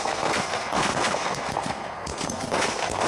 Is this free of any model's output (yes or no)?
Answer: no